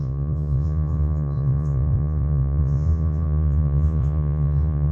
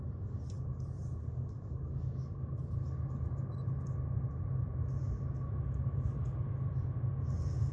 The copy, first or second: first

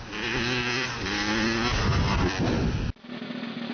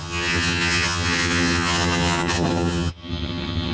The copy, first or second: second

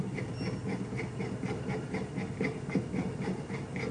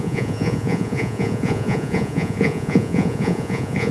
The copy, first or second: second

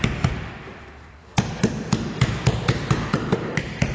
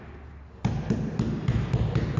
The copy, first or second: first